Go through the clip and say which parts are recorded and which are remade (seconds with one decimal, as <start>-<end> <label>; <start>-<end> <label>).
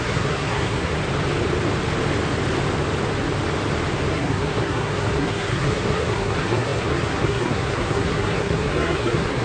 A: 0.0-1.0 remade; 1.0-4.1 recorded; 4.1-9.4 remade